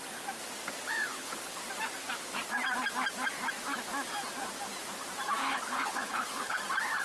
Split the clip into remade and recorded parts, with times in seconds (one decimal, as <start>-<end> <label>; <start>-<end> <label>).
0.0-1.1 recorded; 1.1-1.6 remade; 1.6-5.4 recorded; 5.4-6.6 remade; 6.6-7.0 recorded

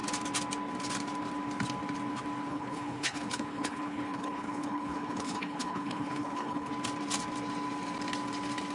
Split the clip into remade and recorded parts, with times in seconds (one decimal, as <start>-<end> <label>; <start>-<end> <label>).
0.0-2.5 recorded; 2.5-6.7 remade; 6.7-8.7 recorded